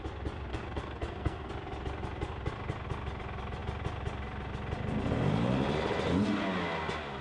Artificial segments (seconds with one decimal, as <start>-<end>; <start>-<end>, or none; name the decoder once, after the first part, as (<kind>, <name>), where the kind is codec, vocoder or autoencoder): 0.5-1.5 (codec, SNAC)